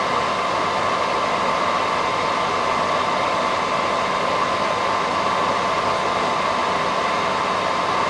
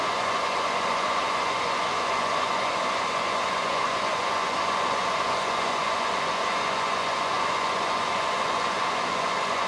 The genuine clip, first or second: first